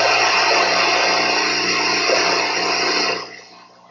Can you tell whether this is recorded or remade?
recorded